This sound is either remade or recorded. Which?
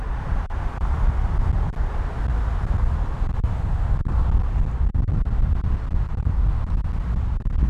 recorded